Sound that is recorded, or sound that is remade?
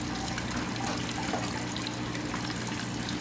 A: recorded